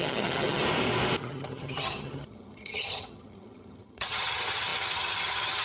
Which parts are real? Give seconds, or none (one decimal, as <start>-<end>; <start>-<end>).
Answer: 0.6-1.2